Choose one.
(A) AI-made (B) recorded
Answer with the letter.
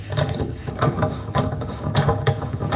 A